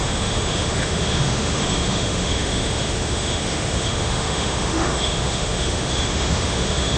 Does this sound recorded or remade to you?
remade